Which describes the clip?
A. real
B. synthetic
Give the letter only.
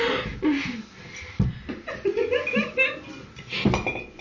A